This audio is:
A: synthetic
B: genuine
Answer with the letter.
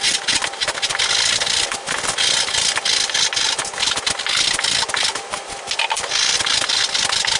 B